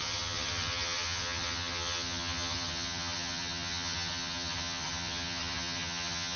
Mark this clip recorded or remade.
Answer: remade